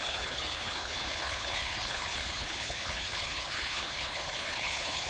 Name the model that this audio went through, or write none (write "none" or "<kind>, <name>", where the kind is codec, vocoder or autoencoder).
codec, HILCodec